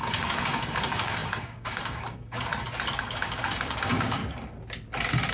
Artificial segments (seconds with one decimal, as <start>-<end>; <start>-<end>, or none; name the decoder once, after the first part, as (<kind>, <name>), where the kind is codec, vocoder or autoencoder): 0.0-2.5 (codec, DAC); 3.0-4.2